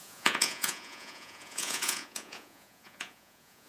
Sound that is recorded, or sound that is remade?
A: remade